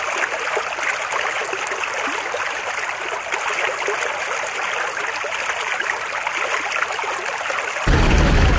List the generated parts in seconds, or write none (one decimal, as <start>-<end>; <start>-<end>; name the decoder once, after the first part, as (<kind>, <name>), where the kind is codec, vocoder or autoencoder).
none